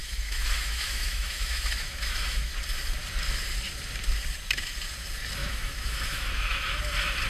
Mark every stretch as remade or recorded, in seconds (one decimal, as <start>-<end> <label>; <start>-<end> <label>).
0.0-2.5 remade; 2.5-5.4 recorded; 5.4-6.8 remade; 6.8-7.3 recorded